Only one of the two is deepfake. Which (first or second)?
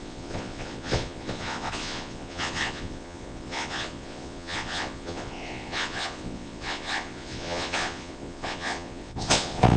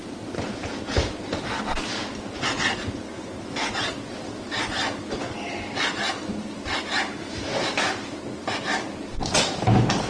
first